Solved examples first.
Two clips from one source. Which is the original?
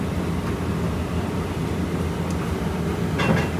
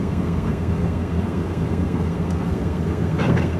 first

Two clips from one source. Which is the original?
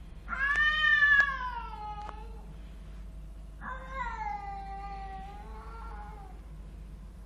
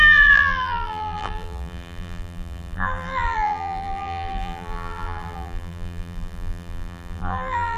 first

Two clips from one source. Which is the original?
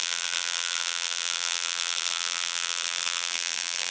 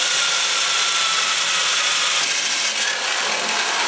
second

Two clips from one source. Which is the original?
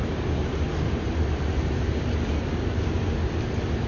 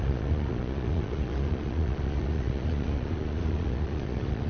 first